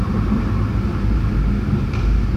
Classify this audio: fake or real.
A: real